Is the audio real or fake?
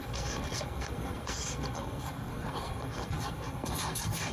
fake